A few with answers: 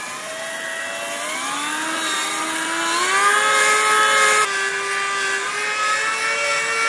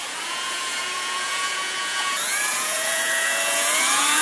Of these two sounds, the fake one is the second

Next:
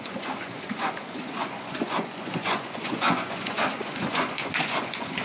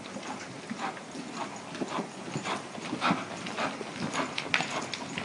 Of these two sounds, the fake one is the first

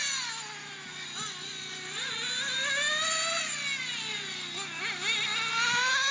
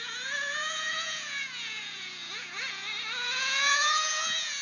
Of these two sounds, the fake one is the second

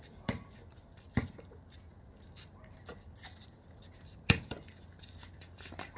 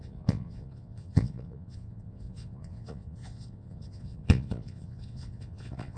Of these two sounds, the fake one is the second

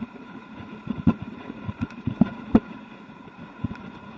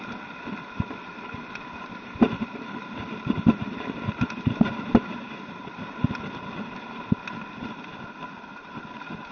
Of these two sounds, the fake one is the first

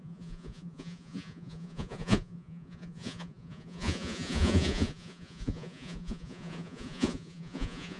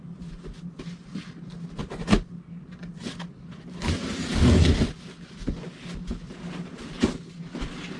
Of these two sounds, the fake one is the first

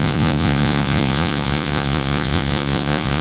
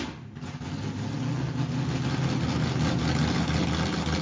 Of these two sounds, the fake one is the first